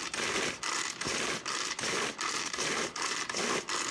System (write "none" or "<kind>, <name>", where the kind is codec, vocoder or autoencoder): none